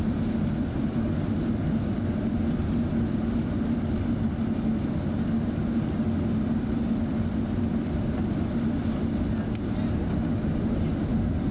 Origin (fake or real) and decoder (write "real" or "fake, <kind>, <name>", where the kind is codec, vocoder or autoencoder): real